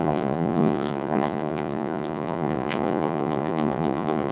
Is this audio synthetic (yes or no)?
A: yes